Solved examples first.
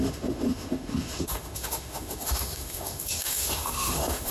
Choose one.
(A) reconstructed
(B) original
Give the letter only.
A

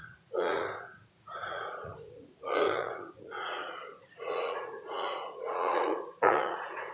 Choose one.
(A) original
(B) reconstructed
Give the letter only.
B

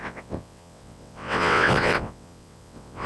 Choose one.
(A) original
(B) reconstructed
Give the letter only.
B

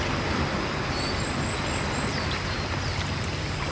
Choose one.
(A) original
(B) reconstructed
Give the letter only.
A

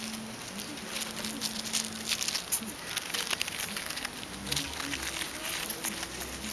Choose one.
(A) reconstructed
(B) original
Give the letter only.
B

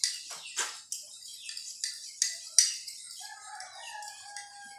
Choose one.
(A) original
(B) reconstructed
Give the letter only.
A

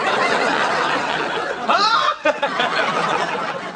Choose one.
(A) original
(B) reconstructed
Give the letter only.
B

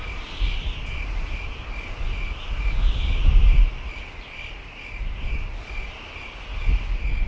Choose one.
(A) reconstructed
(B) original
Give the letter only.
B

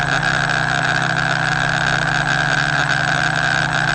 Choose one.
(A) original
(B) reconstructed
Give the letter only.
A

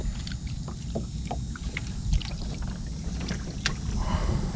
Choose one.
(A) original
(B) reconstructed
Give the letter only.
A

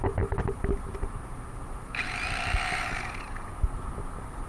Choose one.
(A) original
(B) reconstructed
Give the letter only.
A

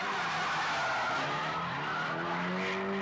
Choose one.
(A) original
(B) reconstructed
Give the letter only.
A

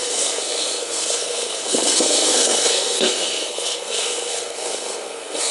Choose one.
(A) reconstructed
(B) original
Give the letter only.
A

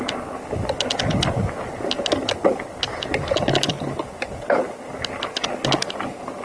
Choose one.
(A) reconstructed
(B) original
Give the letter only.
B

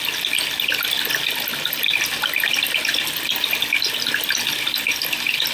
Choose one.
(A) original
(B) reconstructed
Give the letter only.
A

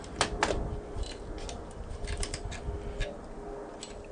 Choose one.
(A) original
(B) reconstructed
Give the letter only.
A